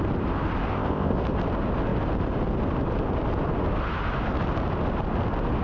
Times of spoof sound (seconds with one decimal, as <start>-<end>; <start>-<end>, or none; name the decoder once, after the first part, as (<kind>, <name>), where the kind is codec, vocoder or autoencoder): 0.7-1.2 (codec, ZipCodec)